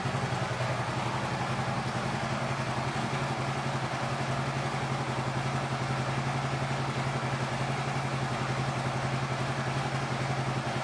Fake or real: real